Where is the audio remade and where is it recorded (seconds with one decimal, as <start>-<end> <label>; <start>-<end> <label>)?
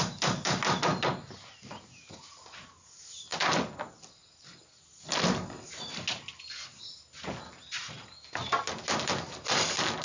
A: 0.0-10.0 recorded